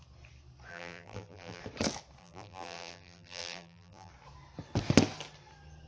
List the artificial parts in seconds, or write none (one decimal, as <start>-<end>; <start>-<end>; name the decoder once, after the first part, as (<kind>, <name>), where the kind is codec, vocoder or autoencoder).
0.7-1.6 (vocoder, BigVGAN v2); 2.2-4.1